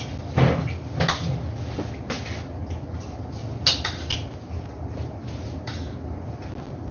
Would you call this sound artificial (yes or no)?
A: no